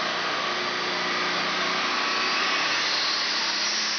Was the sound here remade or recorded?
recorded